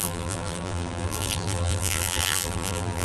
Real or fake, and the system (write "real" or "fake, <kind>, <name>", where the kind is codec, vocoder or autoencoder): fake, vocoder, BigVGAN v2